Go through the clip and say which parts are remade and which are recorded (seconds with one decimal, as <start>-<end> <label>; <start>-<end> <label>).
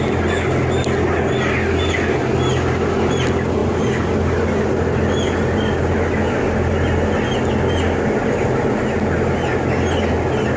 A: 0.0-10.6 recorded